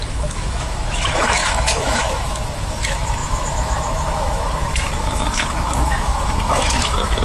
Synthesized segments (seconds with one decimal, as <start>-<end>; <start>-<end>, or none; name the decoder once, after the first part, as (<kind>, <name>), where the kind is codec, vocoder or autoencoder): 0.0-7.2 (autoencoder, DAC-VAE)